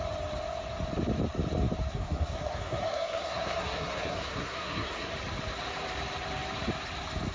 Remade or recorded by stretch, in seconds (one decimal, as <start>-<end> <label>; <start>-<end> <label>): 0.0-1.9 recorded; 1.9-5.1 remade; 5.1-7.3 recorded